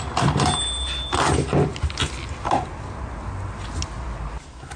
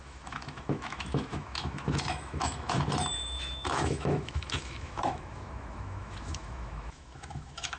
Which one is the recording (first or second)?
first